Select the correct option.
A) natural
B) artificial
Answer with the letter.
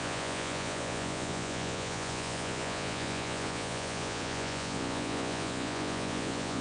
B